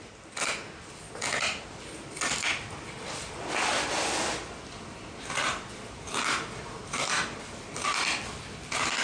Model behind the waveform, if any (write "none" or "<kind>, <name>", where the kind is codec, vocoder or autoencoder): none